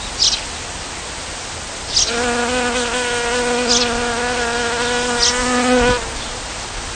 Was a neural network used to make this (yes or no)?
no